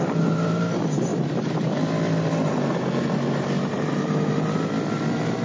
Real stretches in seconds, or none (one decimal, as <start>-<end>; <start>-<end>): 0.0-5.4